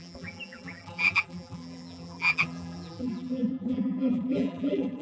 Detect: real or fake fake